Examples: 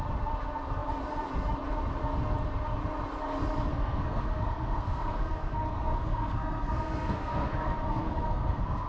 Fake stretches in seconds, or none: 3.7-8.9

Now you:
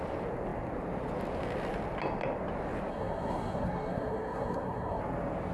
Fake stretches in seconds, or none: 2.9-5.0